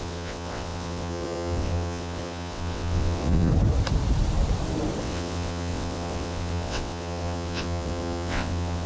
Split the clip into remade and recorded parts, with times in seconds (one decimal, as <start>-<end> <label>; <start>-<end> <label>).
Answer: 0.0-3.5 remade; 3.5-5.0 recorded; 5.0-8.9 remade